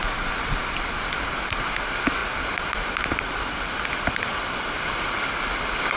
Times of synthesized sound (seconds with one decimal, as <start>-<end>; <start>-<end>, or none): none